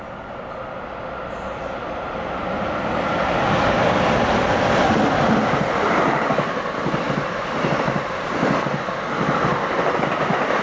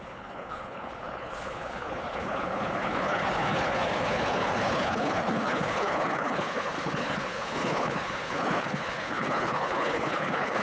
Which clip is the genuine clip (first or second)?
first